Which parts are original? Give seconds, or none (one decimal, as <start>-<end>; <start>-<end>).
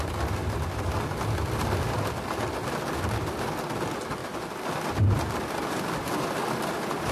0.0-7.1